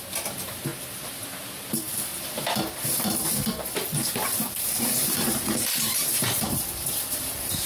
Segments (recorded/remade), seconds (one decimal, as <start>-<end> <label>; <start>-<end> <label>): 0.0-2.1 remade; 2.1-4.5 recorded; 4.5-7.7 remade